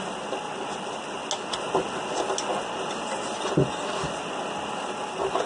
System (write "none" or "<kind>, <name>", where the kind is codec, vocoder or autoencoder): none